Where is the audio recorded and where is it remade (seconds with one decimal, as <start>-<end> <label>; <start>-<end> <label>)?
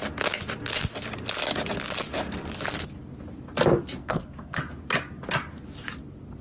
0.0-4.0 recorded; 4.0-4.6 remade; 4.6-6.4 recorded